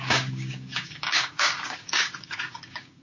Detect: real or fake fake